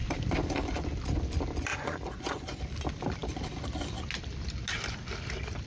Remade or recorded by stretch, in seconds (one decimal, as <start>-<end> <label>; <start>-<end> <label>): 0.0-1.7 recorded; 1.7-2.6 remade; 2.6-5.7 recorded